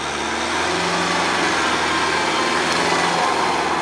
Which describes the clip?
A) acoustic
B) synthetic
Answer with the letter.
A